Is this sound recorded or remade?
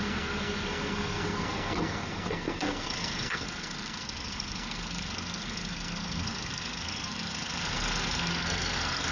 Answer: remade